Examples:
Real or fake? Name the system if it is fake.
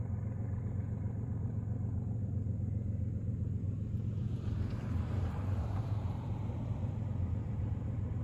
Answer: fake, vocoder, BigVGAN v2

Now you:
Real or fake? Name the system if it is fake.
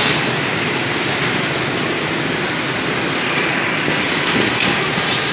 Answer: real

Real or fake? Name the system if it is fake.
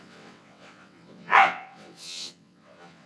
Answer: fake, vocoder, WaveNeXt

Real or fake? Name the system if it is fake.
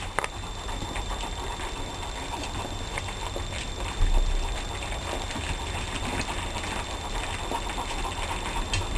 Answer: real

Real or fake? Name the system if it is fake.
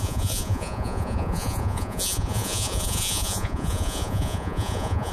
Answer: fake, vocoder, Vocos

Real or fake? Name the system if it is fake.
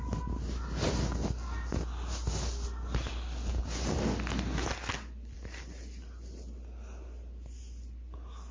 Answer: real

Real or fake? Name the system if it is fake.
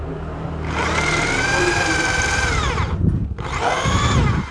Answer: fake, vocoder, BigVGAN v2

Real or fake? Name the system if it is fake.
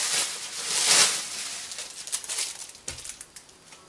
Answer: real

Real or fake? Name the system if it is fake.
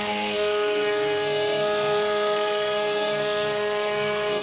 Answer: fake, codec, SNAC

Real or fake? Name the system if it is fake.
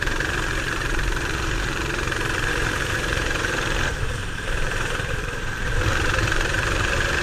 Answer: fake, vocoder, BigVGAN v2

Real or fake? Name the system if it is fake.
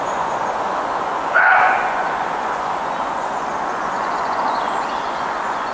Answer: fake, vocoder, Vocos